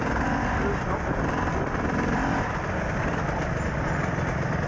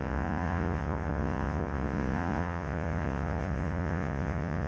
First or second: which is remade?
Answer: second